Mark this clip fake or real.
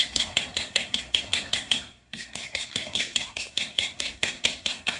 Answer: fake